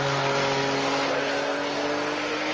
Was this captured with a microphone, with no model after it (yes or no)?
yes